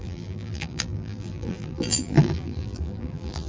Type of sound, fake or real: fake